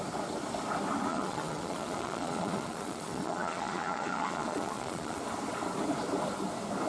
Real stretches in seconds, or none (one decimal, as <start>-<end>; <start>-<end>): 0.0-1.1; 5.2-6.9